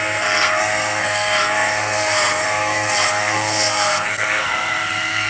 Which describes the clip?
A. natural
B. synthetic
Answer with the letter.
B